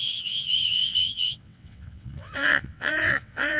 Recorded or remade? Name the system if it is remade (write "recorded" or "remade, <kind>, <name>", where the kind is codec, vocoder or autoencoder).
remade, vocoder, WaveNeXt